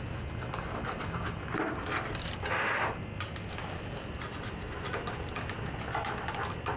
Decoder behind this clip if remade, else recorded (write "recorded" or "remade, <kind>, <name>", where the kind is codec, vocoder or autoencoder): recorded